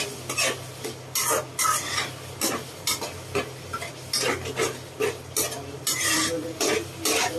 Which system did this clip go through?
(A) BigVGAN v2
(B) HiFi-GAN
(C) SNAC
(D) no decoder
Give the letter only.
D